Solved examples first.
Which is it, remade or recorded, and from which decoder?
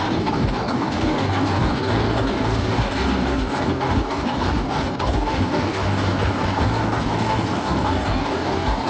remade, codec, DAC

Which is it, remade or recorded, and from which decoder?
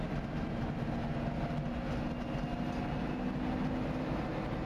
recorded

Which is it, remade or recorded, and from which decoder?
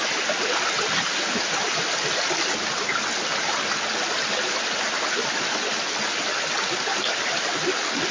recorded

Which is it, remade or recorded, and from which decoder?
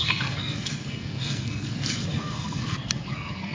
remade, codec, SNAC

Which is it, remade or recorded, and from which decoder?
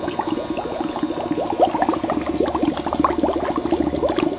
recorded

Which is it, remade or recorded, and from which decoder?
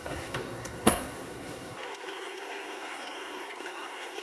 remade, codec, SNAC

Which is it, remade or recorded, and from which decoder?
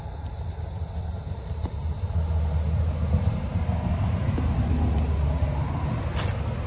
recorded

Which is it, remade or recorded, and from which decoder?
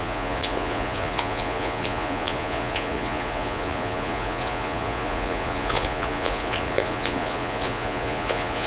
remade, vocoder, Vocos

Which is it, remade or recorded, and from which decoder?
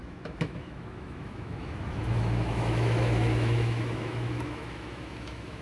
remade, autoencoder, DAC-VAE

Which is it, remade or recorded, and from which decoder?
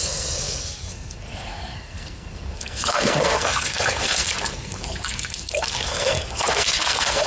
remade, codec, SNAC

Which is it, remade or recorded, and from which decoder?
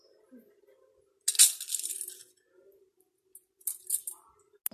recorded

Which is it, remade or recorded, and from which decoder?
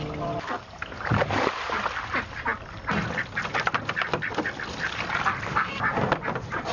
recorded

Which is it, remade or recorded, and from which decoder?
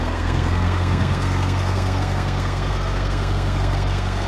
remade, codec, SNAC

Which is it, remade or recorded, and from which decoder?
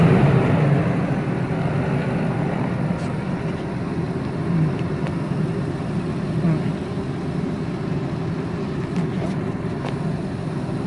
recorded